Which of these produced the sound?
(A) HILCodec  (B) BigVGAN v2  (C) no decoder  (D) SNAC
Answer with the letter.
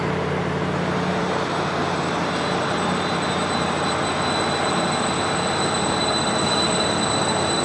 B